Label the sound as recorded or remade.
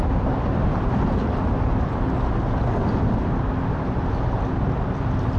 recorded